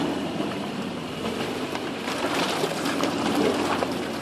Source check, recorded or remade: remade